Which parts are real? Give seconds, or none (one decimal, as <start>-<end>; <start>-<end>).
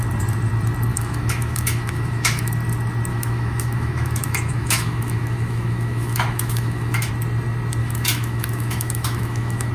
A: 0.0-0.9; 2.5-3.1; 7.1-7.8